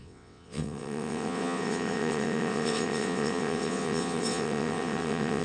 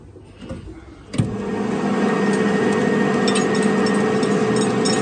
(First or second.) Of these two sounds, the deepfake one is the first